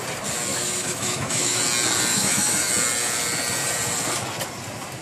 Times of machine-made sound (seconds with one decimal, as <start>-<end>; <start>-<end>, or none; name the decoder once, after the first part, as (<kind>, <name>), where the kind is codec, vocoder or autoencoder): 0.5-1.6 (autoencoder, DAC-VAE); 2.1-2.7